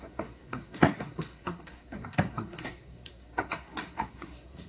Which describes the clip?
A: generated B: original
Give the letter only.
A